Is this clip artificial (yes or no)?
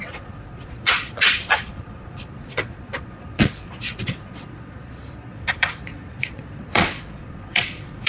yes